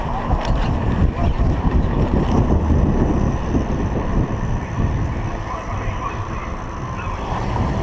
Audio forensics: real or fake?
real